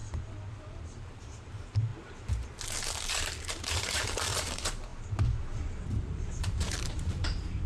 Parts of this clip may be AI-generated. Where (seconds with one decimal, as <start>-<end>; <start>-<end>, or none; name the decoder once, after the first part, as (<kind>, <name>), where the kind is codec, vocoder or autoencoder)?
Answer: 0.5-1.9 (vocoder, BigVGAN v2); 2.8-4.9; 5.9-7.7